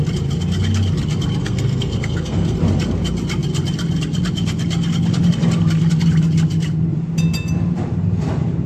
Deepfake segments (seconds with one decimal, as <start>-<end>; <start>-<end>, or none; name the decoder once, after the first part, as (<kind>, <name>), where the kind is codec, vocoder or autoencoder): 1.4-2.6 (codec, SNAC)